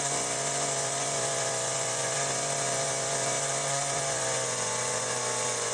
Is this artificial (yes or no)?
yes